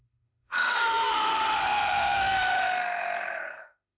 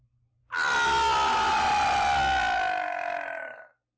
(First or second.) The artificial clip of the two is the first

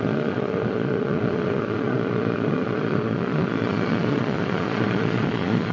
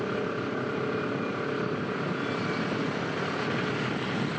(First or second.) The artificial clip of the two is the first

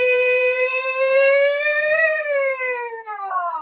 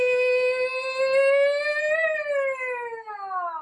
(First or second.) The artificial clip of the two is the first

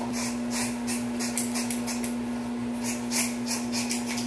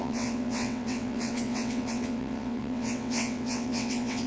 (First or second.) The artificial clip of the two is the second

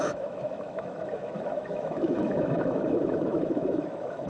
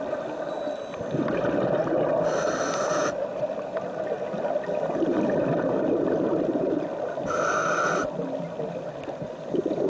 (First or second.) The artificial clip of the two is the first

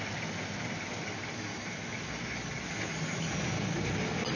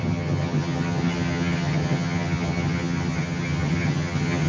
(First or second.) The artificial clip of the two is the second